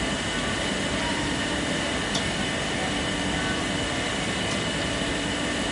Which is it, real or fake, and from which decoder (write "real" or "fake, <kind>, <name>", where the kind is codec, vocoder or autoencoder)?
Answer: real